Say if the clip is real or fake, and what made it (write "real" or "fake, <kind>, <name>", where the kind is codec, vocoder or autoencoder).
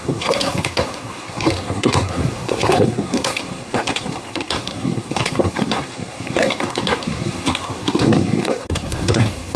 fake, codec, SNAC